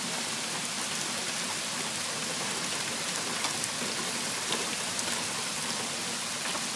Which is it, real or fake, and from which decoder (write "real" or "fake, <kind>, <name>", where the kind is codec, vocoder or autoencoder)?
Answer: real